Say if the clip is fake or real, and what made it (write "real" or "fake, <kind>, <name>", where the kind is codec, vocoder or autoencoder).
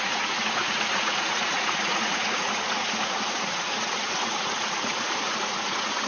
fake, vocoder, Vocos